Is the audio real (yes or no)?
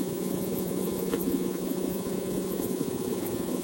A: no